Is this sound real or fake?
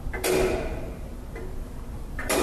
real